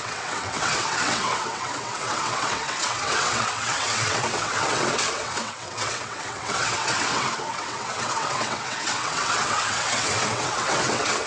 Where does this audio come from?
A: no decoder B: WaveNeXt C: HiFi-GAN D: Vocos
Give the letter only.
B